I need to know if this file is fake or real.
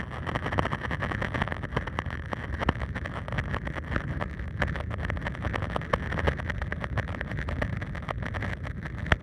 real